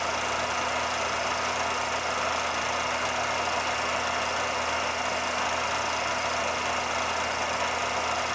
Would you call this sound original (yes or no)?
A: yes